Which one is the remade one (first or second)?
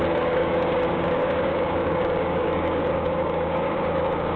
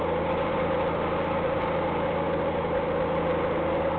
first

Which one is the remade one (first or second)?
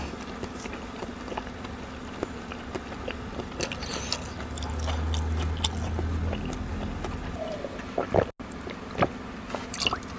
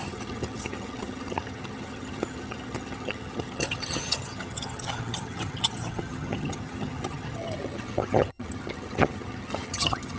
second